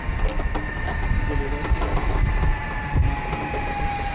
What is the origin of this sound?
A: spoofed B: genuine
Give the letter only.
B